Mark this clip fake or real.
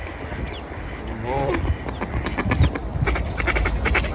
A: real